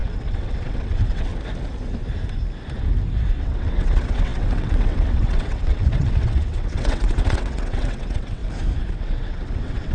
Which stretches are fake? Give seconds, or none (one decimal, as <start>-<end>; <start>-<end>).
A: 0.0-1.3; 3.4-8.4; 8.9-9.9